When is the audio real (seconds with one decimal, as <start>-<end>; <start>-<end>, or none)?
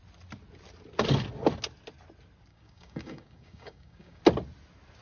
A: 0.0-2.5; 4.2-5.0